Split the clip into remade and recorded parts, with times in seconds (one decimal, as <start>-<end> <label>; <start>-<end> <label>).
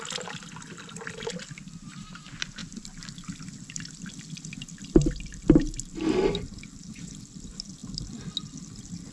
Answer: 0.0-9.1 recorded